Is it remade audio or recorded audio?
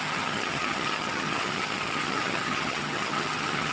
remade